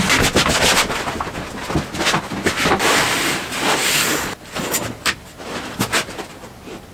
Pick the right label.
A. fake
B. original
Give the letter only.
B